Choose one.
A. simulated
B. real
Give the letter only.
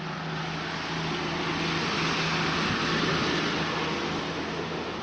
B